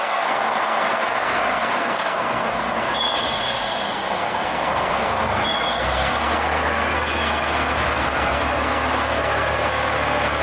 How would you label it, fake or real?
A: fake